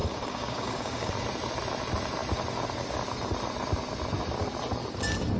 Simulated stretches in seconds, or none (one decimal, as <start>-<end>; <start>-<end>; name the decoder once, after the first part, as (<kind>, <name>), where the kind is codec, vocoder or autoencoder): 0.0-1.1 (codec, DAC)